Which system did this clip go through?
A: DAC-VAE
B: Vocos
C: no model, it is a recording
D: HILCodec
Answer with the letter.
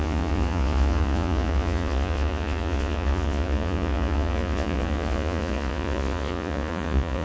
B